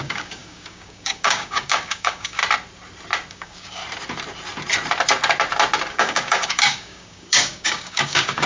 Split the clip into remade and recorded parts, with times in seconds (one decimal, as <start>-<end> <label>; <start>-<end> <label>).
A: 0.0-2.4 remade; 2.4-3.3 recorded; 3.3-3.8 remade; 3.8-5.9 recorded; 5.9-8.5 remade